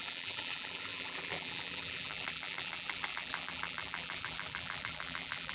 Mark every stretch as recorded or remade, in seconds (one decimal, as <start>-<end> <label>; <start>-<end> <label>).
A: 0.0-5.5 remade